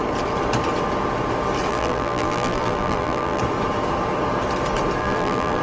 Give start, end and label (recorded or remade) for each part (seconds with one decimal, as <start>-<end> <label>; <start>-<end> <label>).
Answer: 0.0-1.7 recorded; 1.7-3.4 remade; 3.4-5.0 recorded; 5.0-5.6 remade